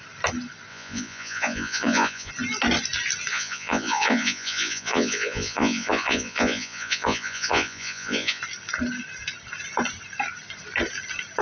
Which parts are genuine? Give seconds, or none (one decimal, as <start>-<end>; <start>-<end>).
0.0-0.7; 2.3-3.3; 8.4-11.4

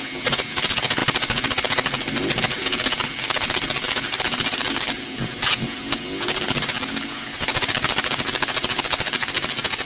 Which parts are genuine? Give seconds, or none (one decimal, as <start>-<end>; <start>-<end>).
0.0-9.9

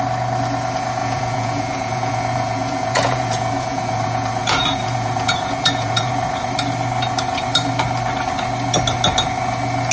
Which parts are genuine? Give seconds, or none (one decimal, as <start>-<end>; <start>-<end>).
0.0-1.0; 6.1-9.9

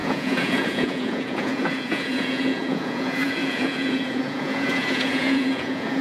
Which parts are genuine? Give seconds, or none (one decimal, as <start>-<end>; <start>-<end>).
none

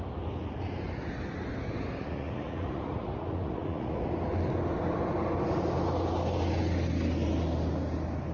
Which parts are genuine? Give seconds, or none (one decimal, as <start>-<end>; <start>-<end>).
0.0-2.0; 4.1-8.3

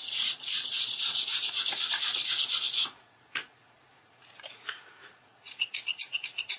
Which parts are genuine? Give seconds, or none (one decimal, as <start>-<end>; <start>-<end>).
none